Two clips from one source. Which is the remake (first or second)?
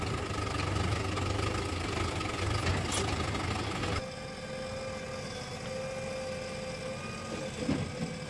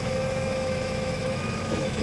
second